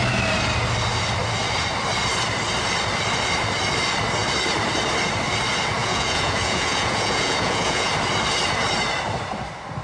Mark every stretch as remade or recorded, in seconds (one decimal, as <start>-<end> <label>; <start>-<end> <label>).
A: 0.0-5.8 recorded; 5.8-7.9 remade; 7.9-9.8 recorded